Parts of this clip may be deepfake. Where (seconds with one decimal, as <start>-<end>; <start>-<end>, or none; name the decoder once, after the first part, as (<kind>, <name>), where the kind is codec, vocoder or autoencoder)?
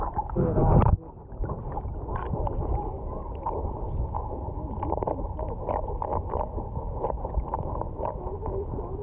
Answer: none